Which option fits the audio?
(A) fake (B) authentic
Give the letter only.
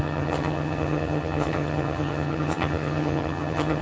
A